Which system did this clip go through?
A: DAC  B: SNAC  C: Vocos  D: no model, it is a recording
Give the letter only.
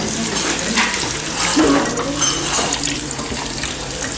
D